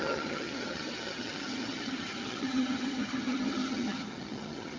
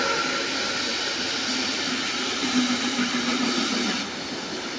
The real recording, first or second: second